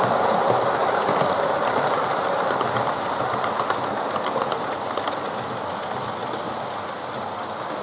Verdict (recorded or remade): recorded